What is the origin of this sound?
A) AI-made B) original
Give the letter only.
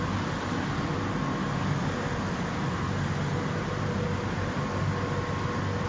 B